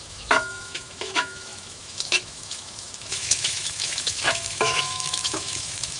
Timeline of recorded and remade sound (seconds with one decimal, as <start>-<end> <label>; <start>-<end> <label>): 0.0-6.0 remade